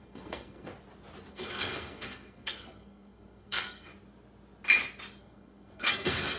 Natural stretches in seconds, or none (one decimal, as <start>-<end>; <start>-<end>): 0.7-1.3; 3.9-5.2